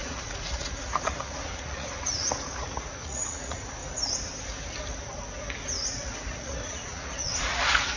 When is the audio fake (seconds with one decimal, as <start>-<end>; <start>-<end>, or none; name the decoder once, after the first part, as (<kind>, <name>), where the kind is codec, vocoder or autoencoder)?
0.0-3.8 (vocoder, Vocos); 6.3-8.0

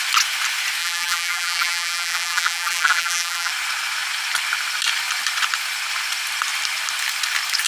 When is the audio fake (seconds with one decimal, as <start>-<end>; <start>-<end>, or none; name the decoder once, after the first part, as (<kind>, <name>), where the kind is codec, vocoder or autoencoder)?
0.8-3.5 (vocoder, BigVGAN v2)